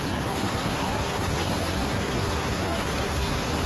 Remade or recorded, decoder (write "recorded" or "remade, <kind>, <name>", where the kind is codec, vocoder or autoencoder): remade, codec, SNAC